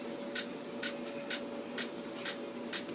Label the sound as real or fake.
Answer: real